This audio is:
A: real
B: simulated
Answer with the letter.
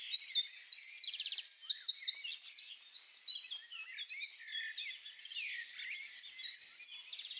A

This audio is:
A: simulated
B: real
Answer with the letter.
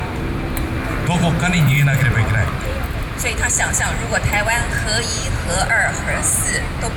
A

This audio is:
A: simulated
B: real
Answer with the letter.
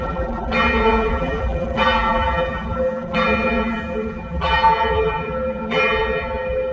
A